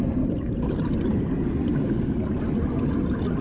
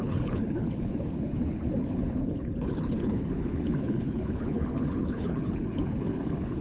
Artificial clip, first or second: second